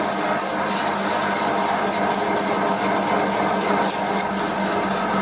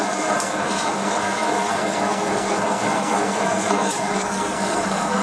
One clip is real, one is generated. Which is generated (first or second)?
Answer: second